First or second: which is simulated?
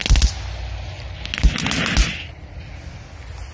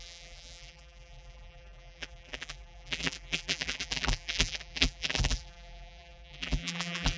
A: second